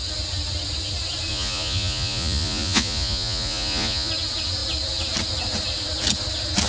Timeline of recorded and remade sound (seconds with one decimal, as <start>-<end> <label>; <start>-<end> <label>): 0.0-1.3 recorded; 1.3-4.1 remade; 4.1-6.7 recorded